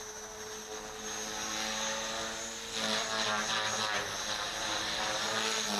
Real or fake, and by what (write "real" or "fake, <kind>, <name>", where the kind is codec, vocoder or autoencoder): real